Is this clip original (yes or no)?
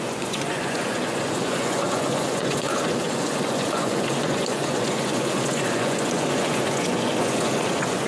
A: no